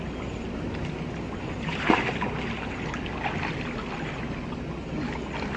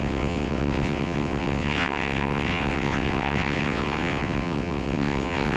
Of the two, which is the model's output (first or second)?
second